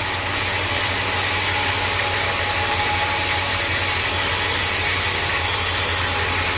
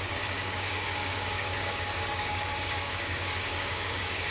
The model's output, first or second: second